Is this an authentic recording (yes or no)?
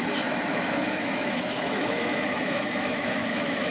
no